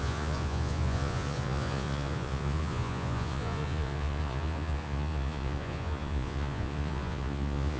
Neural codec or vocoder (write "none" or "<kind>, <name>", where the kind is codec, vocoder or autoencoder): vocoder, Vocos